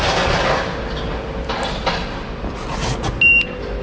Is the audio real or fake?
real